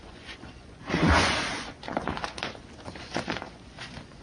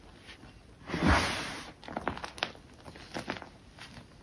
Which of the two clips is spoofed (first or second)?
first